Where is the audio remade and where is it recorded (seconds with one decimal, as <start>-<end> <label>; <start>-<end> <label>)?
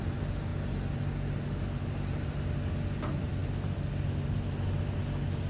0.0-5.5 recorded